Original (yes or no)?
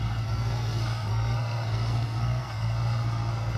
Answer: no